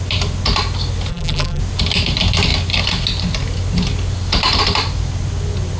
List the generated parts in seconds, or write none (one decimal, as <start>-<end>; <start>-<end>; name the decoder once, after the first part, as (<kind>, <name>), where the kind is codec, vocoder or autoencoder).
1.1-1.6 (vocoder, BigVGAN v2)